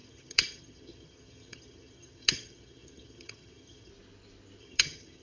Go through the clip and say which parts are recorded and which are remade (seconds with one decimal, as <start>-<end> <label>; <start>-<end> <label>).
0.0-3.9 remade; 3.9-4.6 recorded; 4.6-5.2 remade